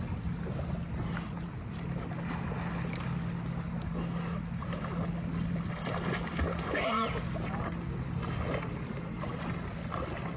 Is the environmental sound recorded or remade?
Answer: recorded